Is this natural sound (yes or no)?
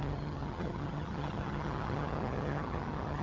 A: no